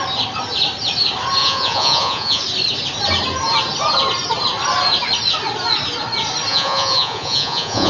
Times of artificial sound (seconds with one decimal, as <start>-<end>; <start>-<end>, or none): 1.4-2.4; 6.5-7.9